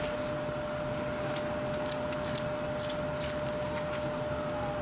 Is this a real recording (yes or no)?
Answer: yes